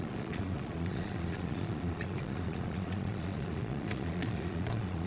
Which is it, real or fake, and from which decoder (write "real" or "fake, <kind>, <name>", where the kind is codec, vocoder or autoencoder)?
fake, vocoder, Vocos